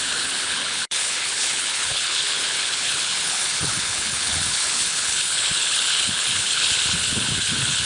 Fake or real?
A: fake